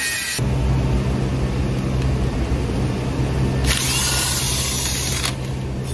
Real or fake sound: real